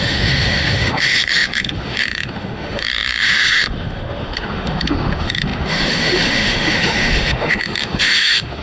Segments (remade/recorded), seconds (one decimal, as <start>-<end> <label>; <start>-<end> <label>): 0.0-8.6 remade